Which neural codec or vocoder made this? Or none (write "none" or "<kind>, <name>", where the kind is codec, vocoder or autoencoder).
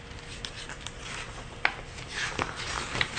none